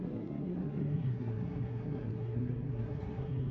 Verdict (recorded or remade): remade